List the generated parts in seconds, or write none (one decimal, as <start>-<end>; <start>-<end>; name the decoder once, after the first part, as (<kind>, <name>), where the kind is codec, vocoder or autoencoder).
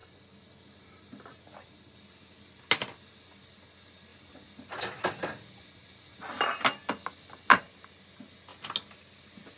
none